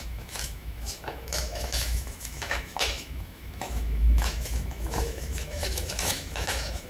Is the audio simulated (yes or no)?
yes